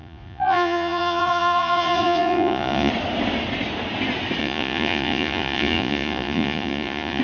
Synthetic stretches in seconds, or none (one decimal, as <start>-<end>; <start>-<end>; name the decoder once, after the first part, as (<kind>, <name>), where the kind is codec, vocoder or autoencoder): 0.0-2.9 (vocoder, Vocos); 4.4-7.2

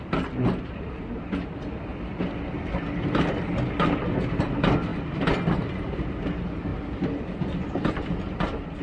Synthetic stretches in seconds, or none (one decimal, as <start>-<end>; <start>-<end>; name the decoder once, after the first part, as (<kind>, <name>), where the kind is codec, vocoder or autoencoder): none

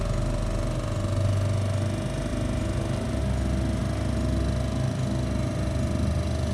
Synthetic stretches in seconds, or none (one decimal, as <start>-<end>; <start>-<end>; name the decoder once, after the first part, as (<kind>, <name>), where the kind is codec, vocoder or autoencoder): none